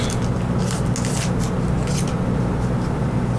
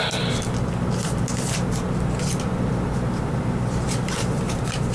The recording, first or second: first